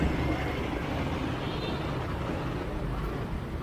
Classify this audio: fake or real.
real